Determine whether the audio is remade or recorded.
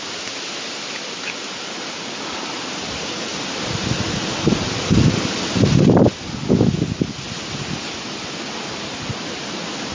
recorded